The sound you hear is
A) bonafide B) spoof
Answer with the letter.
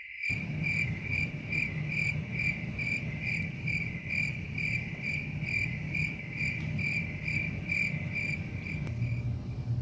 A